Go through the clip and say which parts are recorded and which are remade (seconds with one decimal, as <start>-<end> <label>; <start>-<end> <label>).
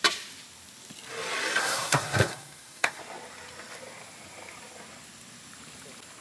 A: 0.0-1.6 recorded; 1.6-3.0 remade; 3.0-6.2 recorded